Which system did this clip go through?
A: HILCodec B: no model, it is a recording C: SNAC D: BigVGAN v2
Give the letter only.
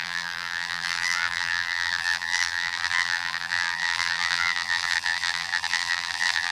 D